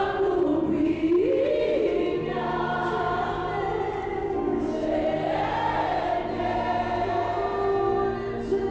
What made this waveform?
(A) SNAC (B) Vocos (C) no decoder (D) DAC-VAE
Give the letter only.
C